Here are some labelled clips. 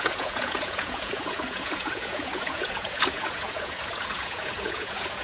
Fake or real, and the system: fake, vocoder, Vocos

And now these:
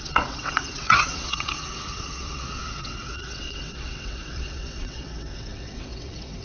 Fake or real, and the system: fake, vocoder, WaveNeXt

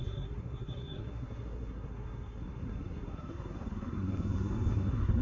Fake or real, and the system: fake, codec, SNAC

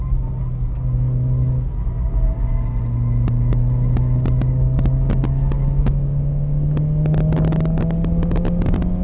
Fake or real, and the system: real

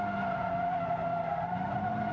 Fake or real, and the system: real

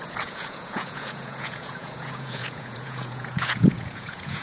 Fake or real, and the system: fake, vocoder, Vocos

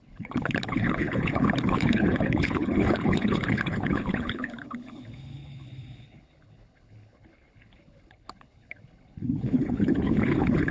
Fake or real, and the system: fake, codec, HILCodec